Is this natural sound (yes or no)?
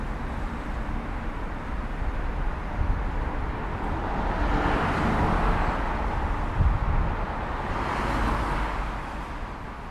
yes